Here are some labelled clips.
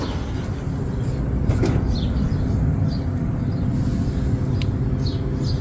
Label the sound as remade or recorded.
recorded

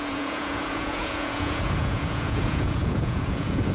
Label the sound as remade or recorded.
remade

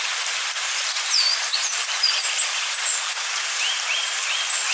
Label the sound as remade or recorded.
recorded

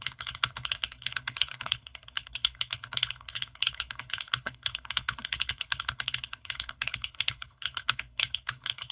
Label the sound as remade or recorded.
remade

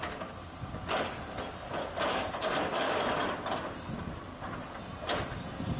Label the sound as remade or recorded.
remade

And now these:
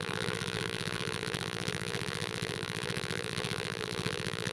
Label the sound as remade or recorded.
remade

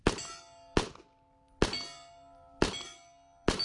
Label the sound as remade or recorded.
recorded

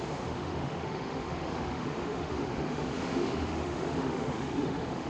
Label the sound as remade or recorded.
remade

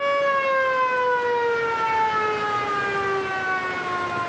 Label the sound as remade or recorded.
recorded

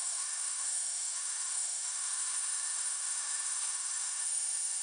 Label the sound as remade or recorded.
remade